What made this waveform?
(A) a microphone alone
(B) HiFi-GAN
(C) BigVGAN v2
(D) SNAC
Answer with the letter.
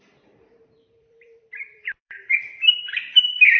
C